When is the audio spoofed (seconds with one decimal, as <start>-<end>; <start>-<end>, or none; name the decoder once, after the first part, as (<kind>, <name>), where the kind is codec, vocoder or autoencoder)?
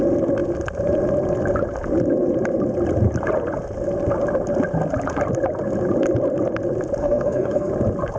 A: 7.0-7.7 (codec, SNAC)